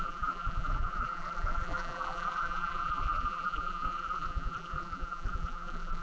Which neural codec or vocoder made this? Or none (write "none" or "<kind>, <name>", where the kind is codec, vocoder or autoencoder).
vocoder, BigVGAN v2